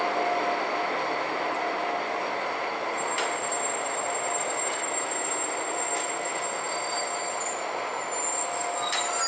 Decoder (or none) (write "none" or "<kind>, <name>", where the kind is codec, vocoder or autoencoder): none